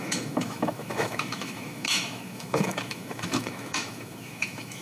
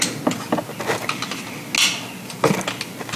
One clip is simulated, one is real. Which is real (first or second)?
second